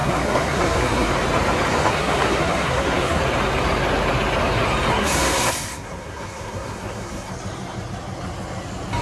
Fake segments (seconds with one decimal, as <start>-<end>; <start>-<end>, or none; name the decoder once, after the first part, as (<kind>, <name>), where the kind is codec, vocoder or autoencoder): 0.0-1.1 (codec, SNAC); 1.8-3.2; 4.9-7.3